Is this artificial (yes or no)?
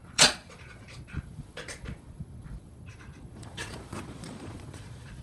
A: yes